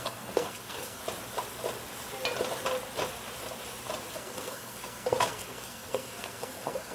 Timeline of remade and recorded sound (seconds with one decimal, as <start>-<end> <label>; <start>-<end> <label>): 0.0-1.0 remade; 1.0-4.1 recorded; 4.1-6.9 remade